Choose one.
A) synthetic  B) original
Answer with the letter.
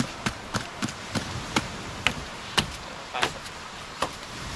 A